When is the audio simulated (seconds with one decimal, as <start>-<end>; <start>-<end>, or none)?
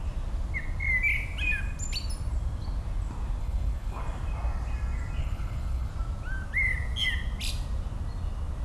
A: 3.4-4.0; 5.2-5.9